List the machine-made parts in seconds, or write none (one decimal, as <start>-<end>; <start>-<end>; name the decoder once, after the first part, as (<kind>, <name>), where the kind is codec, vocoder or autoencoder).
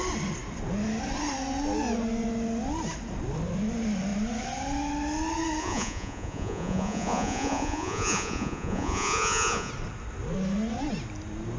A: 5.6-9.7 (vocoder, Vocos)